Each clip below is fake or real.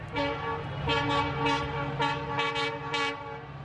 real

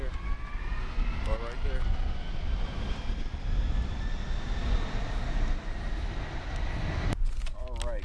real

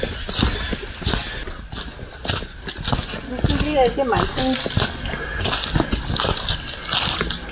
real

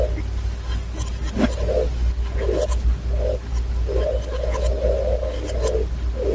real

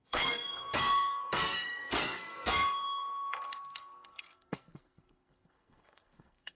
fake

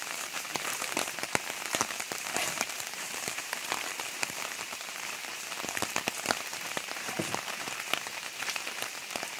fake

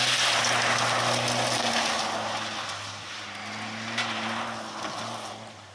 real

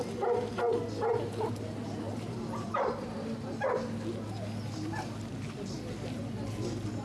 real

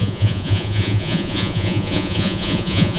fake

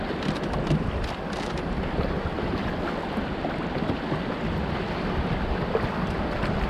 real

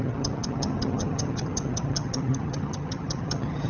fake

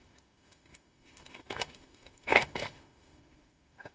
fake